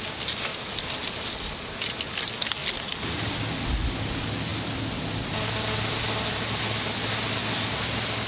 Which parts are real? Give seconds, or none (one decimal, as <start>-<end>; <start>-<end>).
0.0-8.3